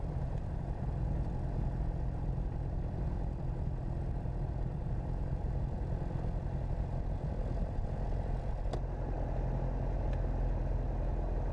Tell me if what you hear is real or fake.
real